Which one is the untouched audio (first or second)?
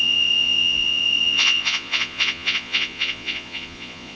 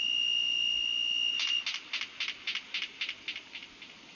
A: second